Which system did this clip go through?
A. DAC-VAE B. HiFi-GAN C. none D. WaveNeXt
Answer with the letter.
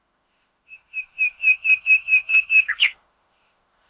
A